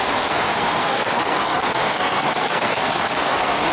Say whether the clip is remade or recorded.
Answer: remade